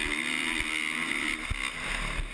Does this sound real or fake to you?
real